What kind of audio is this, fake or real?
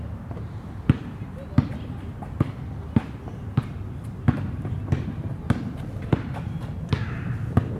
real